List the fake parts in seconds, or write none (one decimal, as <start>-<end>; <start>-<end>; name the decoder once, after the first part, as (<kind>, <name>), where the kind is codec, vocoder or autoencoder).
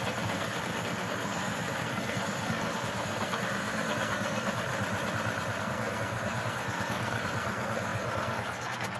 0.0-4.7 (codec, SNAC); 5.6-9.0